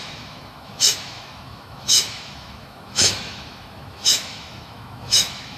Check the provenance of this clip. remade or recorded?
remade